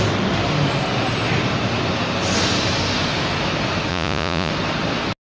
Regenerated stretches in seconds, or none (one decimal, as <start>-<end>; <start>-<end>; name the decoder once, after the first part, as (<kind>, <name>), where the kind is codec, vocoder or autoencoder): 3.9-4.5 (vocoder, Vocos)